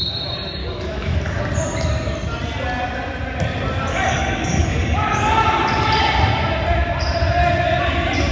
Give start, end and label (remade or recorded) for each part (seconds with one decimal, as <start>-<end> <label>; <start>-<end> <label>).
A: 0.0-0.6 recorded; 0.6-1.4 remade; 1.4-3.9 recorded; 3.9-5.3 remade; 5.3-8.3 recorded